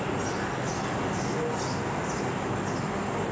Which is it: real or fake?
real